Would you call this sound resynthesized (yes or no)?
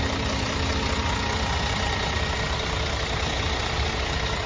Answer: no